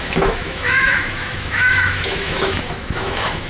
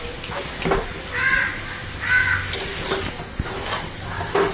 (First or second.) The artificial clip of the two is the first